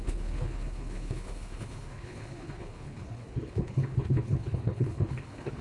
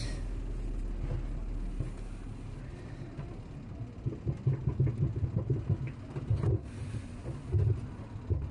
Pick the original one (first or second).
second